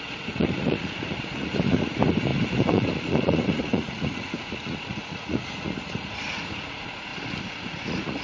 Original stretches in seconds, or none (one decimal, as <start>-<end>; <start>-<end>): 7.1-7.7